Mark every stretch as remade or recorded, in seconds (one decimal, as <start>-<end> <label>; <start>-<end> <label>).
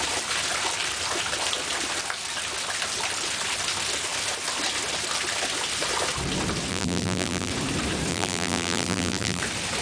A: 0.0-6.7 recorded; 6.7-7.5 remade; 7.5-8.1 recorded; 8.1-9.4 remade; 9.4-9.8 recorded